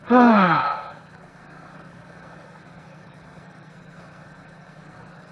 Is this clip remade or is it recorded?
remade